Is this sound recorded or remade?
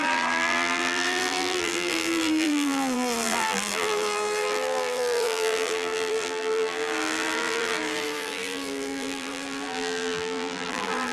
remade